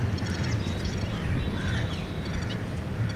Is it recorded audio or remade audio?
recorded